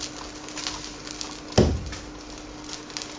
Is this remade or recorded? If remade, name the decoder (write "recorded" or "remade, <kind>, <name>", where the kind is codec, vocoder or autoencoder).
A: recorded